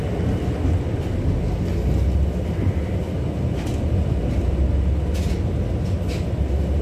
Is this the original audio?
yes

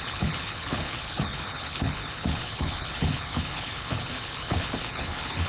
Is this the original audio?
no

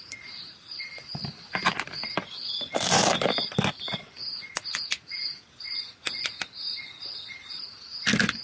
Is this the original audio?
yes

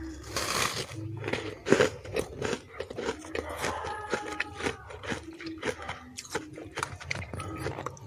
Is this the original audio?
yes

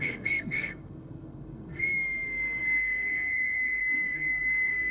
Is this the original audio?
no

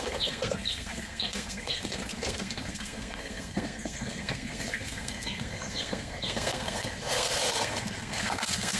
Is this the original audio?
no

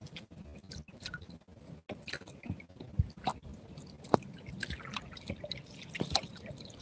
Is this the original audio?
yes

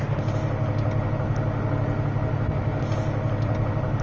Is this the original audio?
yes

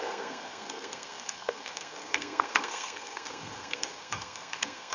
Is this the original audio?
no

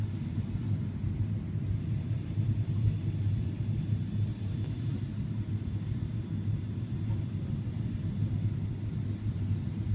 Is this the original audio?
yes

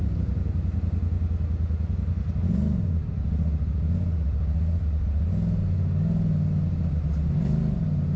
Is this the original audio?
yes